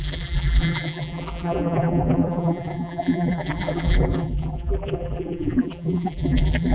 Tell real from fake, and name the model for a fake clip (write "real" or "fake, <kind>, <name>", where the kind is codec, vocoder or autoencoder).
fake, vocoder, BigVGAN v2